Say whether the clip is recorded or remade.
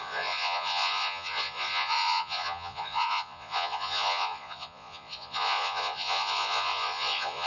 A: remade